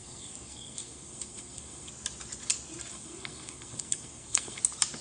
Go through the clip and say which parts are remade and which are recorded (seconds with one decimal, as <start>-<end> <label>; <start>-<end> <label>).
0.0-1.9 remade; 1.9-2.9 recorded; 2.9-4.6 remade; 4.6-5.0 recorded